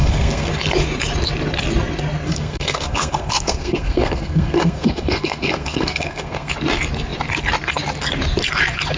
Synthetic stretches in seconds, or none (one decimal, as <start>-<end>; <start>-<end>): 0.0-0.5; 2.3-6.5